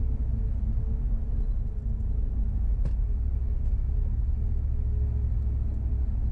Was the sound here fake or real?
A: real